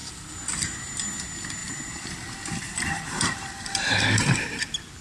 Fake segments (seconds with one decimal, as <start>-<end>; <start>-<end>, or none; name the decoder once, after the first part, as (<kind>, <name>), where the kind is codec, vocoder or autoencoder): 1.6-4.6 (vocoder, BigVGAN v2)